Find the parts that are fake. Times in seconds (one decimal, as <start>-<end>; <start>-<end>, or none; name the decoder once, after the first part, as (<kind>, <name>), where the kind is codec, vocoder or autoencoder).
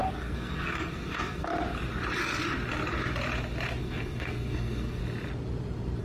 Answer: 0.0-1.5 (codec, SNAC); 3.8-5.0